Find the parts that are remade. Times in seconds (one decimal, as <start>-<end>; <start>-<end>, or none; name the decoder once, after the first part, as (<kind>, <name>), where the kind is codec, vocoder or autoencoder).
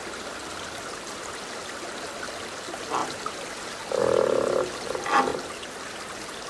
none